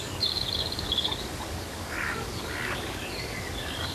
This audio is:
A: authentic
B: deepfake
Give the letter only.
B